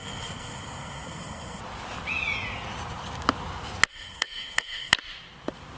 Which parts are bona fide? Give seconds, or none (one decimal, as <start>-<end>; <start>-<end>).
1.6-3.9; 4.9-5.8